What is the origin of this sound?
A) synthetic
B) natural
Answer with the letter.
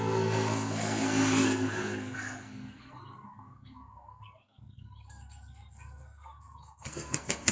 A